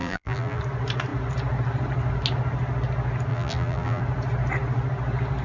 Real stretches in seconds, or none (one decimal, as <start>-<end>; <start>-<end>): 0.6-3.3; 4.0-5.4

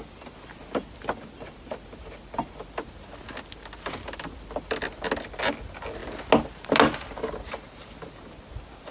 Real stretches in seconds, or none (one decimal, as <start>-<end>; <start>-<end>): 0.0-8.9

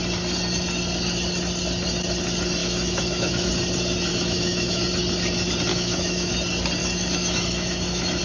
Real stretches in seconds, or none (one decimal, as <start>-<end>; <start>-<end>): 0.0-2.6; 3.5-4.1; 4.8-5.7; 6.3-6.8

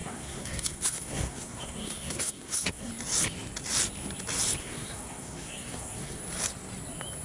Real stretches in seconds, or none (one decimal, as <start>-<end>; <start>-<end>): 2.9-4.6; 6.2-7.2